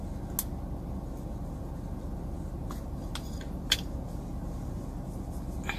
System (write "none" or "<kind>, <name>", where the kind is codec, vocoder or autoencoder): none